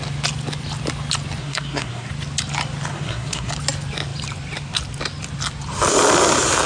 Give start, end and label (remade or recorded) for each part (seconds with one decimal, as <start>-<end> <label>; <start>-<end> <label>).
0.0-1.4 recorded; 1.4-2.1 remade; 2.1-2.9 recorded; 2.9-3.5 remade; 3.5-6.7 recorded